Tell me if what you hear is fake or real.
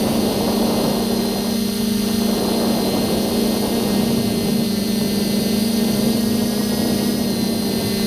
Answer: real